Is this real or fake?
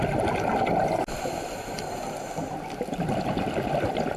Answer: real